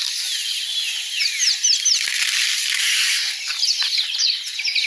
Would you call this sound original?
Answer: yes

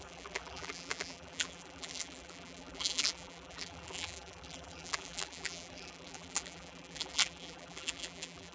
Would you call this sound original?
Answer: no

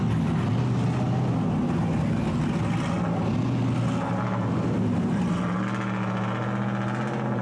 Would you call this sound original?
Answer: yes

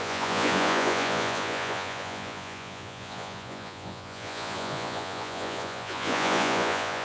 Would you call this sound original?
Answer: no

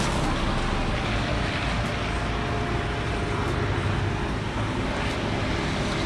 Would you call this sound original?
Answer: yes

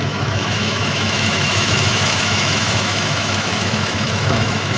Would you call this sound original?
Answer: no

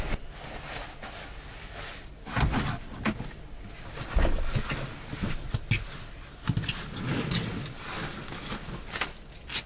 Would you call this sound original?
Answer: yes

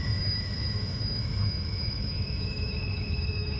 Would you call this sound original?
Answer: no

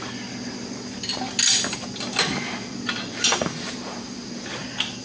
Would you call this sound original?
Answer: yes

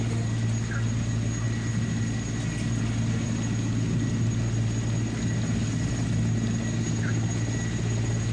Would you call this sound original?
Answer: yes